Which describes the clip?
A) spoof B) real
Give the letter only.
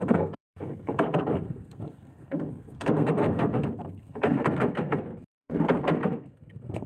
A